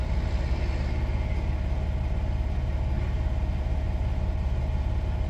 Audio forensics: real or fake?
real